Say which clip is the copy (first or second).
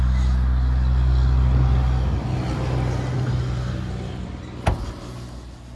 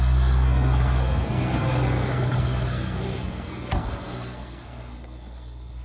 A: second